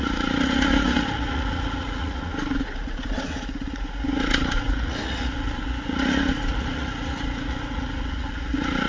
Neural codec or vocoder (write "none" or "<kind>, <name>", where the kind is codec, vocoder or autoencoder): vocoder, Vocos